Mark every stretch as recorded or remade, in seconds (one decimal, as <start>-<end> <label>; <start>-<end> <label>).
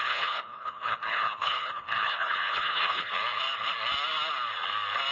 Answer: 0.0-3.1 remade; 3.1-5.1 recorded